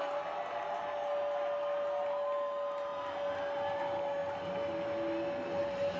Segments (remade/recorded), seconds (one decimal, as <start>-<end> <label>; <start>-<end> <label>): 0.0-6.0 recorded